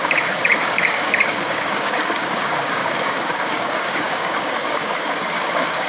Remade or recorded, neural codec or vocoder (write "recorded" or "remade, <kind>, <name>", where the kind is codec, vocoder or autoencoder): remade, codec, DAC